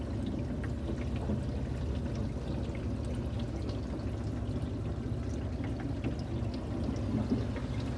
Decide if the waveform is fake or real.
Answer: real